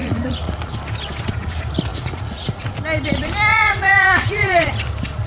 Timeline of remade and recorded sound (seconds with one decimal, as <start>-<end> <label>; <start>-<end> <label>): 0.0-0.7 remade; 0.7-1.9 recorded; 1.9-2.7 remade; 2.7-3.5 recorded; 3.5-4.7 remade; 4.7-5.3 recorded